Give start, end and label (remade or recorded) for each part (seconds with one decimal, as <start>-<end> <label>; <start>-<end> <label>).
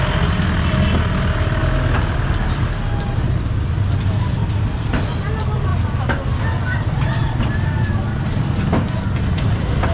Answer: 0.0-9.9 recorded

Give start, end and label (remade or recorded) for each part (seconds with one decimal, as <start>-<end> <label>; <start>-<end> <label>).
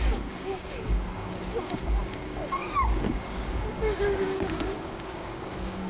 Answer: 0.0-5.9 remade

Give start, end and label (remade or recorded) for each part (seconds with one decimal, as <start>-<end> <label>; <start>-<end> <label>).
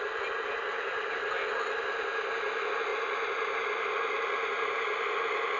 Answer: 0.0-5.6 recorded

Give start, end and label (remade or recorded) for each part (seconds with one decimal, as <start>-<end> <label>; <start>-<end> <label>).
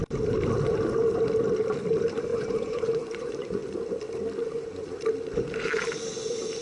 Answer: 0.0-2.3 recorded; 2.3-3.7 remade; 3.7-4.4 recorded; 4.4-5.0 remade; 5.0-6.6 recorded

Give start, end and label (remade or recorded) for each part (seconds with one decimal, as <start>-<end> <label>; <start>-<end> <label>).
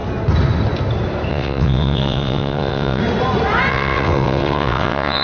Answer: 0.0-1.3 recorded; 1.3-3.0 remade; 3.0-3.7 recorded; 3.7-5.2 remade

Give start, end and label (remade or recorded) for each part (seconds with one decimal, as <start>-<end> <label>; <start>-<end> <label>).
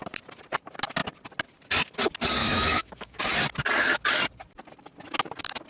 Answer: 0.0-2.4 recorded; 2.4-3.2 remade; 3.2-5.7 recorded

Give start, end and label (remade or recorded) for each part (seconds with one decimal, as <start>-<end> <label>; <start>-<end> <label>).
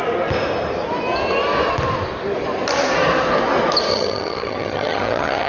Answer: 0.0-3.9 recorded; 3.9-5.5 remade